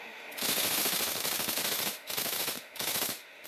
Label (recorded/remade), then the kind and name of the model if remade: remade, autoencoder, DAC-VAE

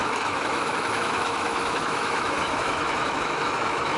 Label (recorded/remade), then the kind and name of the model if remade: remade, autoencoder, DAC-VAE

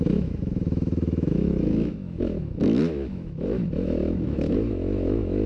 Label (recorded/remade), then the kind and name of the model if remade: remade, autoencoder, DAC-VAE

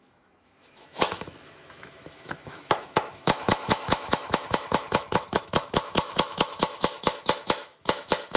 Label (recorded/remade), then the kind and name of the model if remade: remade, autoencoder, DAC-VAE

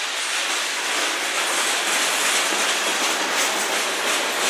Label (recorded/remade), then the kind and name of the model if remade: recorded